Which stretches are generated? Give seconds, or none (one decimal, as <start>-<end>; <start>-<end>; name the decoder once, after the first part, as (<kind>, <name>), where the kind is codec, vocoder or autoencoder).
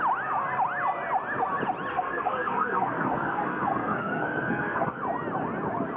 1.9-5.0 (codec, SNAC)